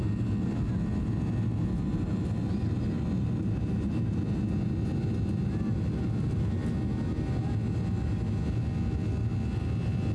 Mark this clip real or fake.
real